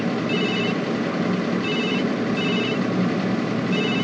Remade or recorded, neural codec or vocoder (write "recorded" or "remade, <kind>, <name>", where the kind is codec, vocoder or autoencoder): recorded